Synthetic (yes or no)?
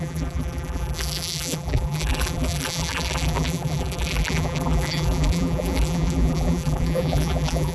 yes